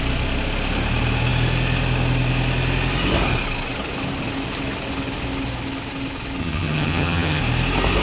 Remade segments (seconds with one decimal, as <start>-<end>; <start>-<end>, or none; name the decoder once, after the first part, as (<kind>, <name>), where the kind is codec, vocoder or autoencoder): 6.4-7.4 (vocoder, HiFi-GAN)